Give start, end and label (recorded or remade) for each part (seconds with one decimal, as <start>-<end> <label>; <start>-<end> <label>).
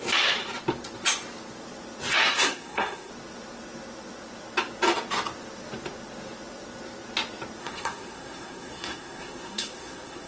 0.0-2.2 recorded; 2.2-3.1 remade; 3.1-7.6 recorded; 7.6-10.3 remade